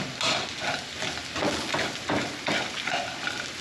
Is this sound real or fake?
real